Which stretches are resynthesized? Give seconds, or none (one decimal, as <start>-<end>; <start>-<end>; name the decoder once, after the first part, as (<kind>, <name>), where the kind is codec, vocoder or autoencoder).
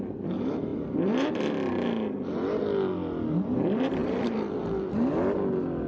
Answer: 0.7-1.7 (vocoder, BigVGAN v2); 4.0-4.9